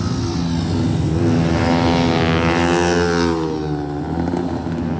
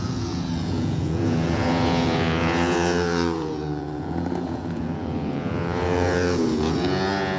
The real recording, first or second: first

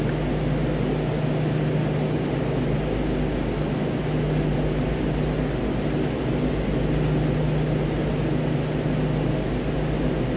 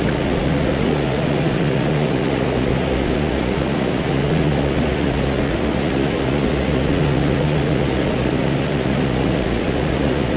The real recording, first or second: first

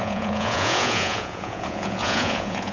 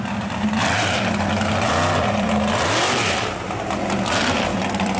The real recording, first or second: second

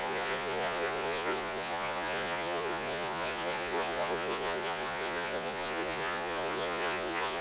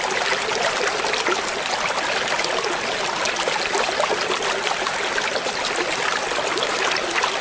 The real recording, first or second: second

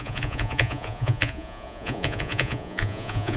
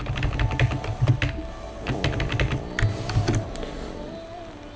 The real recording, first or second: second